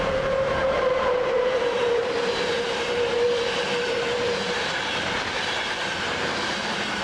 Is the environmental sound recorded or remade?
remade